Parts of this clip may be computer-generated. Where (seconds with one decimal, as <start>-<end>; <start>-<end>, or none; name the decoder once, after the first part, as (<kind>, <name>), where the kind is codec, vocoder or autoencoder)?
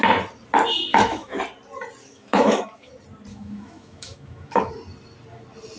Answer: 0.9-1.4 (autoencoder, DAC-VAE); 2.0-2.9; 3.3-4.7